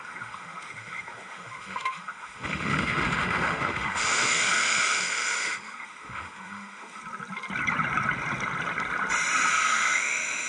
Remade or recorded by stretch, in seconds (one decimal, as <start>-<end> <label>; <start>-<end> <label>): 0.0-7.0 remade; 7.0-9.5 recorded; 9.5-10.5 remade